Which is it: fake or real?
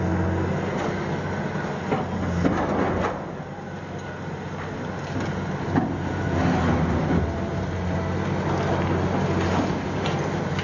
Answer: real